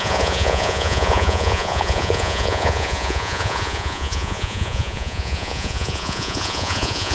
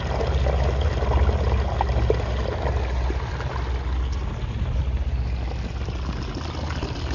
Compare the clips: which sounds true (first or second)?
second